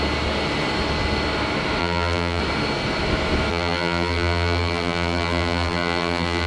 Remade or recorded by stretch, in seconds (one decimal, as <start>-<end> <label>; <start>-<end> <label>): 0.0-1.8 recorded; 1.8-2.4 remade; 2.4-3.5 recorded; 3.5-6.5 remade